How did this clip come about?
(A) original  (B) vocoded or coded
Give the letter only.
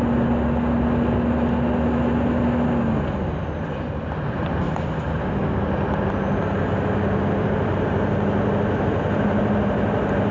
A